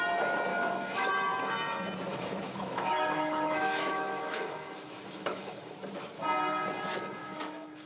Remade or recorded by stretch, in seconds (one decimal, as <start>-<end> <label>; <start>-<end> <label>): 0.0-0.5 recorded; 0.5-1.1 remade; 1.1-2.1 recorded; 2.1-5.7 remade; 5.7-7.2 recorded; 7.2-7.9 remade